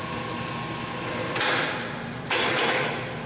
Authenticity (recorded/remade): recorded